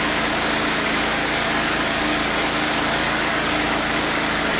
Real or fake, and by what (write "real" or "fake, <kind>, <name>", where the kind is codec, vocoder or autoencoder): fake, codec, DAC